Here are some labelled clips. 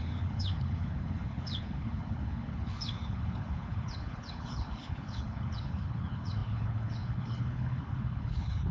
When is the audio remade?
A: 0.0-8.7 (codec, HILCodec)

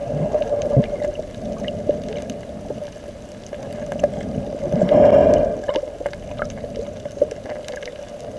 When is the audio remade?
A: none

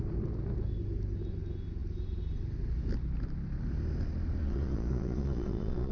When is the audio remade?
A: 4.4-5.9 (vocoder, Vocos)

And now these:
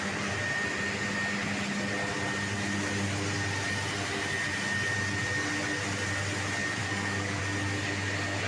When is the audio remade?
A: 6.8-7.4 (codec, DAC)

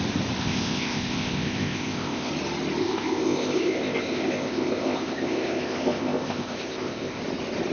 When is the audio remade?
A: 0.4-2.3 (codec, ZipCodec); 2.8-7.2

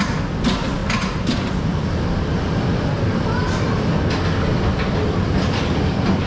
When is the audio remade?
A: none